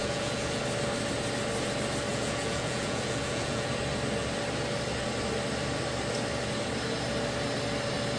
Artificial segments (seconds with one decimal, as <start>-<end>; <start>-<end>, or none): 0.0-0.6; 2.1-3.7

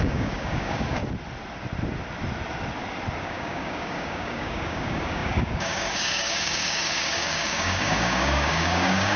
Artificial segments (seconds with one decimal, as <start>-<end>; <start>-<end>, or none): 0.0-1.0; 3.2-9.2

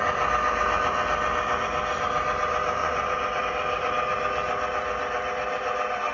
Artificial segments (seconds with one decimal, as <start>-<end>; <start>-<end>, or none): 2.8-3.4

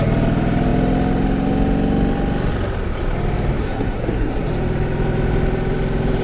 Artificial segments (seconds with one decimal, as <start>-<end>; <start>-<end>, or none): 3.6-4.5

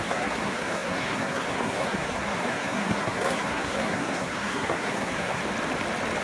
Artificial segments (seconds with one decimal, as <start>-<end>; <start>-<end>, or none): 0.0-5.4